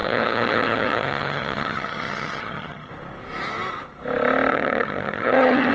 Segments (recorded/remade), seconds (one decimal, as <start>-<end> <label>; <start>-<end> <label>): 0.0-2.9 remade; 2.9-4.5 recorded; 4.5-5.7 remade